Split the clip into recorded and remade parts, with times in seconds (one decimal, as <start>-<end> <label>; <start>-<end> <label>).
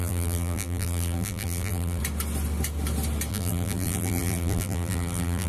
0.0-2.0 remade; 2.0-3.3 recorded; 3.3-5.5 remade